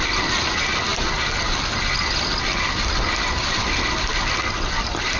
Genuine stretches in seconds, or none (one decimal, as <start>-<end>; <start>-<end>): 0.0-5.2